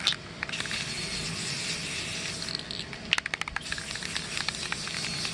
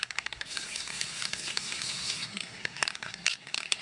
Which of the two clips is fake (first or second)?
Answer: second